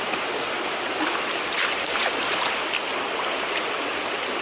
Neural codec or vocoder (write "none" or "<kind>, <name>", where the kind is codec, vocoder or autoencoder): none